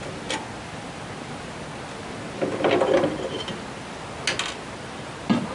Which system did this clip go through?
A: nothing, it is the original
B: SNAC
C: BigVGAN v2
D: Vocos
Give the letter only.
A